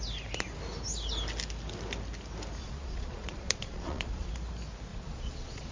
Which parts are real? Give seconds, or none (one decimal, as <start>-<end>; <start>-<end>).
0.0-2.6; 4.3-4.9